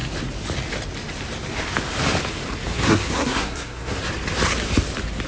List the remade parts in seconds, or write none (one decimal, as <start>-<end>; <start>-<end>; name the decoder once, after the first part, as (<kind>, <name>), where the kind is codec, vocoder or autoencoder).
2.7-4.0 (codec, SNAC)